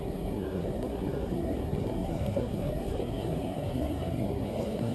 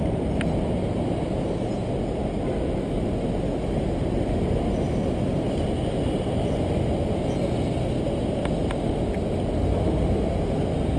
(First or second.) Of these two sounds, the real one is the second